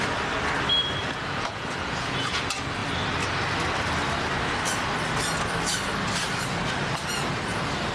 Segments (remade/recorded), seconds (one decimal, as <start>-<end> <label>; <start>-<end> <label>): 0.0-1.0 recorded; 1.0-2.4 remade; 2.4-7.9 recorded